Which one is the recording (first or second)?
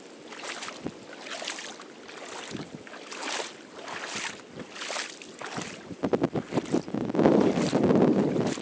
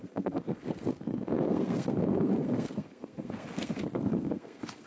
first